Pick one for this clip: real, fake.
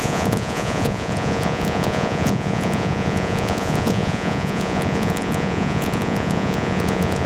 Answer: fake